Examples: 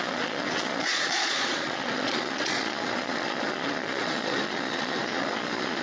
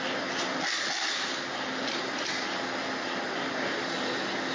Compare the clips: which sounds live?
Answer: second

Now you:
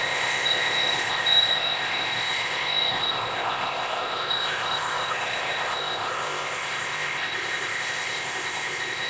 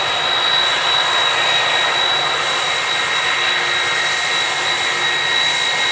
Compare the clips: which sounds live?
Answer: second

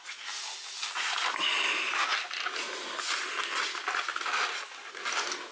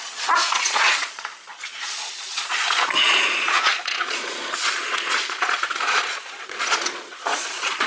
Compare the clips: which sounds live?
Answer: first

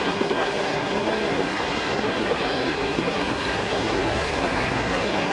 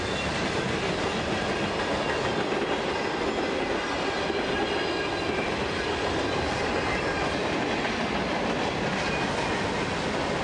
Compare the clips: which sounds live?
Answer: second